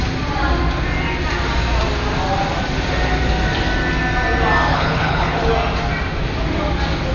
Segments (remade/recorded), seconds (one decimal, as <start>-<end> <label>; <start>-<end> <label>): 0.0-4.7 recorded; 4.7-5.5 remade; 5.5-7.1 recorded